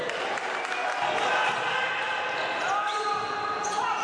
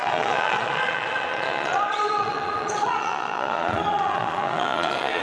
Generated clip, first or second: second